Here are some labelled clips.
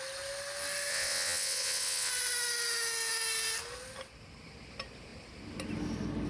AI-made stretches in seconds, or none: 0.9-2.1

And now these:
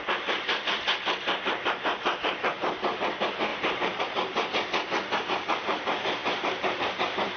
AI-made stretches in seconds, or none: 3.5-4.0; 6.2-7.4

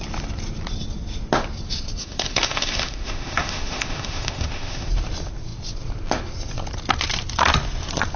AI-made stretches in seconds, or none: 2.0-4.9